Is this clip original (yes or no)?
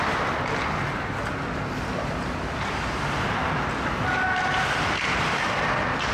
yes